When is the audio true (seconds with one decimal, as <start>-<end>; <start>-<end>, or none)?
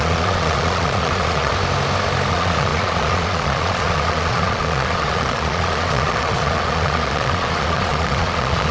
1.5-2.3